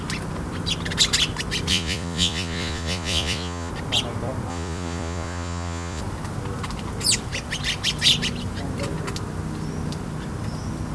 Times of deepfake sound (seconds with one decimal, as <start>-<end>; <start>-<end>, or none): 1.7-3.7; 4.5-6.0